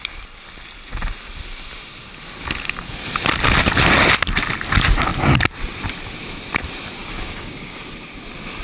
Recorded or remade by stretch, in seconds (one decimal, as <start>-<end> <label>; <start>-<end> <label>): 0.0-7.0 recorded; 7.0-7.8 remade; 7.8-8.6 recorded